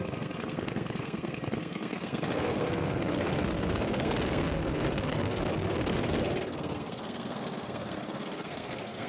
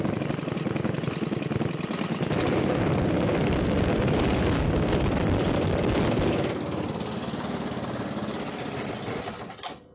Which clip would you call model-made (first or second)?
first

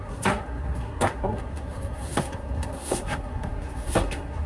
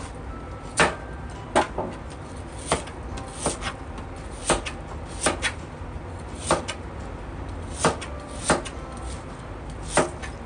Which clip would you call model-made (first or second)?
first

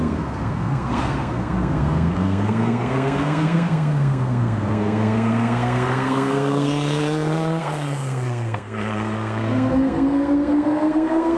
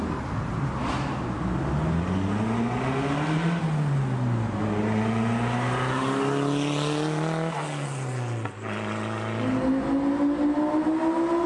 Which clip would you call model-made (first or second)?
first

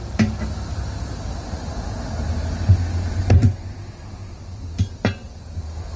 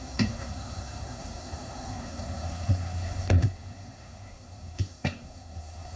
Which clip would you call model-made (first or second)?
second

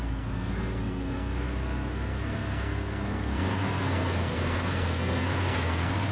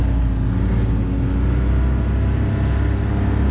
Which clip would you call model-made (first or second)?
first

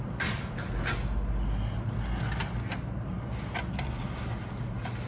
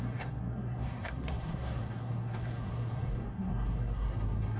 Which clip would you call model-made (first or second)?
second